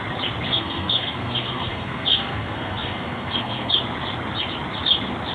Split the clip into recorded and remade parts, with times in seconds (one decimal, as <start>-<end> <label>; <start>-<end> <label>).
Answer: 0.0-0.5 recorded; 0.5-3.7 remade; 3.7-5.3 recorded